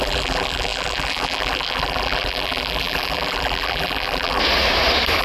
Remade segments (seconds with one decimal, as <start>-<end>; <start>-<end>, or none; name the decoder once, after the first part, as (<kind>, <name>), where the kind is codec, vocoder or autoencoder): 0.0-4.4 (vocoder, BigVGAN v2)